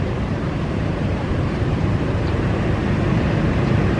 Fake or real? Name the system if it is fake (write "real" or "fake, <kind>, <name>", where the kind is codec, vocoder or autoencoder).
fake, vocoder, BigVGAN v2